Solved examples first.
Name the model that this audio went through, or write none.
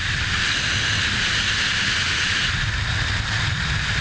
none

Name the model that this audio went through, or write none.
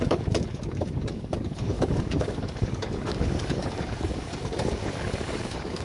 codec, DAC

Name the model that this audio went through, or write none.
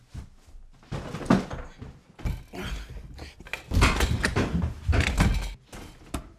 none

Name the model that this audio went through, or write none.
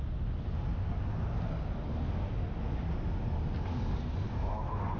none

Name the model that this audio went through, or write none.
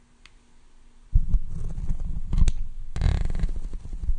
none